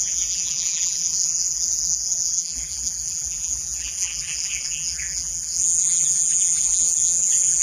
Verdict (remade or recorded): remade